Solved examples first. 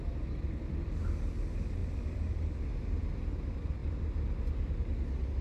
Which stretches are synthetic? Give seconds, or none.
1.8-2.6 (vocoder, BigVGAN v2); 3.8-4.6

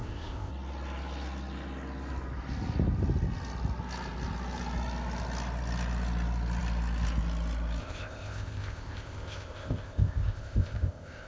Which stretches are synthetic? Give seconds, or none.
0.0-0.5 (codec, ZipCodec); 7.8-11.3

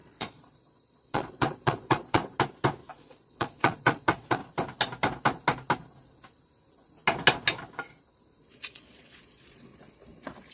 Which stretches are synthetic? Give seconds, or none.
0.0-2.2 (vocoder, Vocos); 2.9-4.4; 8.5-9.7

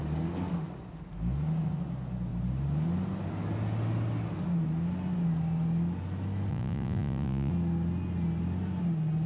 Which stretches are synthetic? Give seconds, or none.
6.5-7.5 (vocoder, Vocos)

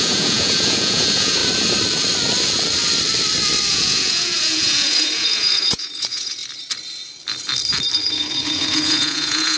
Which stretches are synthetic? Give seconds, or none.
0.0-1.4 (vocoder, Vocos); 3.7-6.4; 8.1-9.6

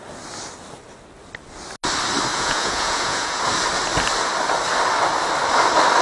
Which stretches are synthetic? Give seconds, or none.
2.3-3.4 (vocoder, Vocos)